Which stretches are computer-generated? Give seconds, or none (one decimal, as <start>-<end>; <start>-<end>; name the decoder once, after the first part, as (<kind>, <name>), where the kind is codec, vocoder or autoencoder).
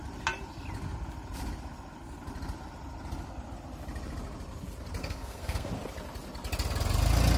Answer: 5.0-5.7 (codec, SNAC)